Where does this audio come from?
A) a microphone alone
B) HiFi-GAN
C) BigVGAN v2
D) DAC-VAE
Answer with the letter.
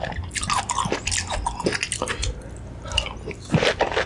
A